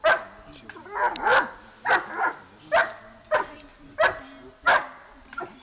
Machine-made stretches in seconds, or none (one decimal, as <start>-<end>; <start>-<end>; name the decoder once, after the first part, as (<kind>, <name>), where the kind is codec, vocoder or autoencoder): none